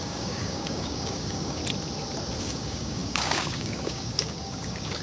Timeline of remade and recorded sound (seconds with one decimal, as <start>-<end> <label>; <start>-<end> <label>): 0.0-1.6 remade; 1.6-2.4 recorded; 2.4-5.0 remade